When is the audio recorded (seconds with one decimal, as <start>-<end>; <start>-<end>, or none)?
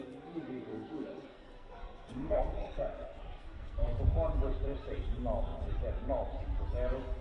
0.0-0.7; 4.0-7.2